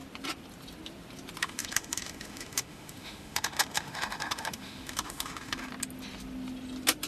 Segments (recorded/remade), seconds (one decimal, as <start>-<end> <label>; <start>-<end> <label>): 0.0-1.4 recorded; 1.4-5.7 remade; 5.7-7.1 recorded

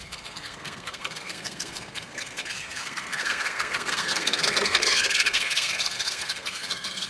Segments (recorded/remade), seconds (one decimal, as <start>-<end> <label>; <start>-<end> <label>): 0.0-7.1 remade